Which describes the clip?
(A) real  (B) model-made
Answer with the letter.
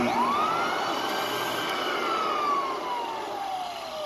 A